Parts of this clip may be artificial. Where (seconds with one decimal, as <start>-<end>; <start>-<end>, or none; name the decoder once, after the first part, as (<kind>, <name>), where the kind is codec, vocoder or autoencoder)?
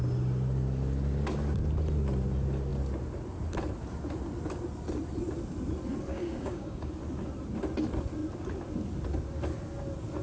6.1-6.9 (codec, DAC)